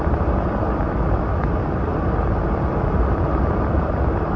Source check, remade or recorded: recorded